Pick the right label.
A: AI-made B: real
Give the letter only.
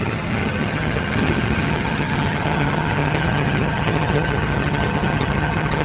A